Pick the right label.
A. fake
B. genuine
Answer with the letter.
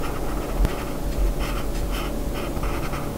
B